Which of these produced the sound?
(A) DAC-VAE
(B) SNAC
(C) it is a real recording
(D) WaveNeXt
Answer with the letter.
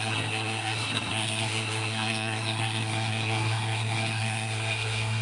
B